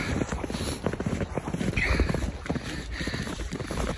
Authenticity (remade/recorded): recorded